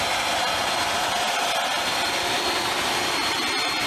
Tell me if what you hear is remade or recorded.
recorded